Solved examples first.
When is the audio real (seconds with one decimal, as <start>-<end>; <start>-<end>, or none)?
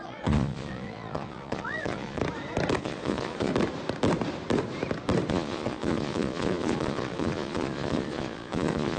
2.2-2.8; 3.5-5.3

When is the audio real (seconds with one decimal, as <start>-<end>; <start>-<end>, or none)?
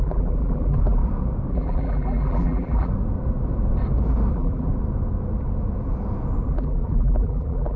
1.0-1.5; 2.9-4.3; 4.7-6.5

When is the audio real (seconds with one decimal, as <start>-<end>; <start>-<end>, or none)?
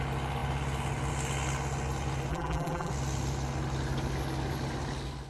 0.0-2.3; 2.9-5.3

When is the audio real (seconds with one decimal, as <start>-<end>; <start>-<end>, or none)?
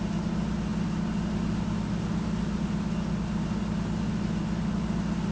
0.0-5.3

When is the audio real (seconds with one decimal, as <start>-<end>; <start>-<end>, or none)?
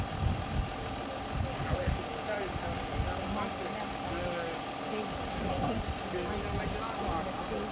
0.0-5.3; 5.8-7.7